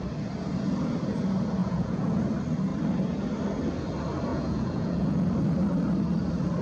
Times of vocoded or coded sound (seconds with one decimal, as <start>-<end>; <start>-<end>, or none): 1.6-2.2; 4.3-5.3